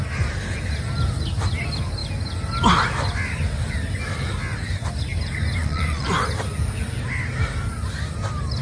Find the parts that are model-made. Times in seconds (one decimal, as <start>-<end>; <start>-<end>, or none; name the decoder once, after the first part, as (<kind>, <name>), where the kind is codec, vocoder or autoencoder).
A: 5.6-6.1 (vocoder, Vocos)